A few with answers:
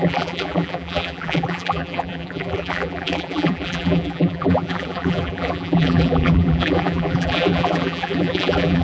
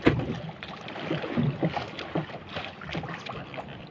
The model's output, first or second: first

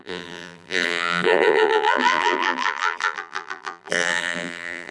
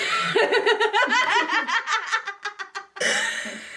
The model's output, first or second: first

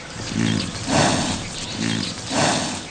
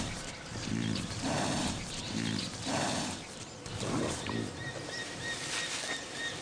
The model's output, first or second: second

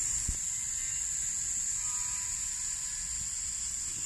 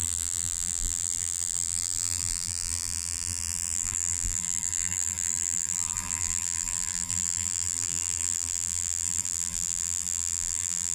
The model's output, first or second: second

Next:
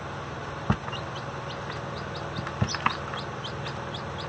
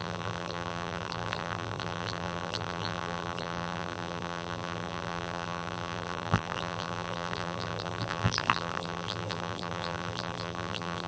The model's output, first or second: second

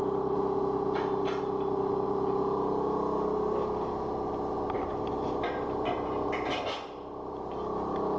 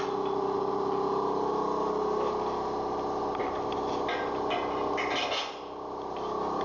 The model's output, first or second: first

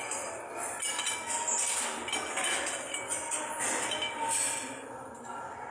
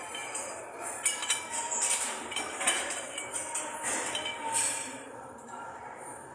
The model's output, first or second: second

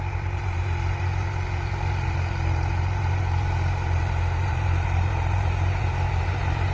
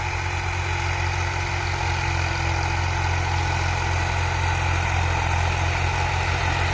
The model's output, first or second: first